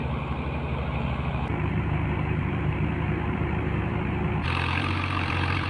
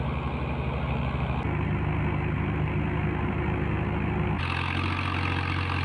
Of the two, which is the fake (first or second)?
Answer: first